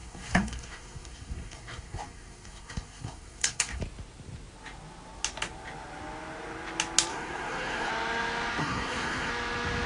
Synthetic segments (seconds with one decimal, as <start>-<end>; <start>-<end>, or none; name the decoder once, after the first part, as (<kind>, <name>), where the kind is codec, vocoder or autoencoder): 0.0-3.8 (codec, SNAC); 7.1-7.9; 8.6-9.3